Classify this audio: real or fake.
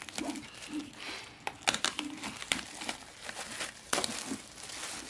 real